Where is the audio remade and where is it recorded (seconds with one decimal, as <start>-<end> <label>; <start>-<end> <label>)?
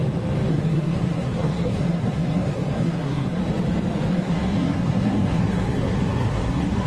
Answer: 0.0-0.5 recorded; 0.5-3.4 remade; 3.4-4.1 recorded; 4.1-6.9 remade